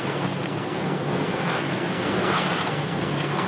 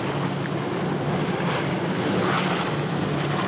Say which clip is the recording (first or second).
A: second